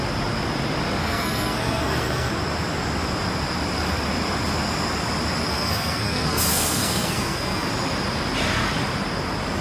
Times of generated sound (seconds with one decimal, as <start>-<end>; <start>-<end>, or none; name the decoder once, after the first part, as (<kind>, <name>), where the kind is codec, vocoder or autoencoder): 1.0-2.3 (codec, SNAC); 5.5-7.7

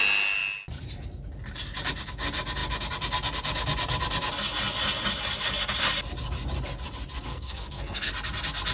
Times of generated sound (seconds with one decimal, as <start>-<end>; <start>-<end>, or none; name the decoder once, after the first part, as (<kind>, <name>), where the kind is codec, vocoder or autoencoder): 7.3-8.1 (codec, SNAC)

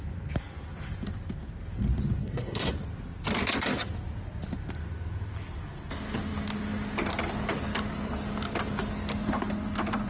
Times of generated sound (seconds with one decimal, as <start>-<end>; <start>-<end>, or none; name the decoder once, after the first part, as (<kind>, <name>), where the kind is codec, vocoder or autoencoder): 2.2-2.7 (codec, SNAC)

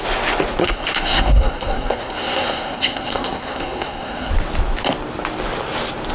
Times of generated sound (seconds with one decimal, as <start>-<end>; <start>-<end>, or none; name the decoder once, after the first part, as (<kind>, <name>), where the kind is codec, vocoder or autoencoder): 0.6-4.3 (codec, SNAC)

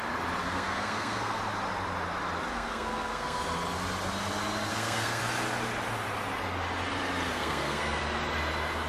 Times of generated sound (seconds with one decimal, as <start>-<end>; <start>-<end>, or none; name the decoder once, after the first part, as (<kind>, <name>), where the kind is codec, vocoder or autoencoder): 0.4-1.4 (codec, SNAC); 2.5-3.4; 4.7-5.2; 7.3-8.0

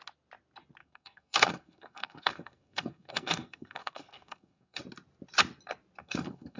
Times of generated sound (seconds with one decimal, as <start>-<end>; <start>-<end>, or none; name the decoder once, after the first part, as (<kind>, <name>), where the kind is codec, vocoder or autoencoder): 0.8-4.8 (codec, SNAC); 6.0-6.6

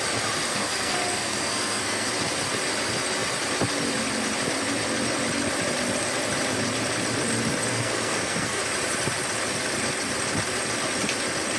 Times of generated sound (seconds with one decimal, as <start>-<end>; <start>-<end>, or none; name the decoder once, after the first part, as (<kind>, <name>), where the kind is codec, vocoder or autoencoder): 0.5-2.1 (codec, SNAC); 7.7-8.6

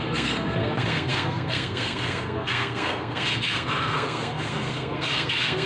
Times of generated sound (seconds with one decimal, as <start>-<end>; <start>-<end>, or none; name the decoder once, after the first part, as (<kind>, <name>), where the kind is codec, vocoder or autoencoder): 0.0-5.7 (codec, SNAC)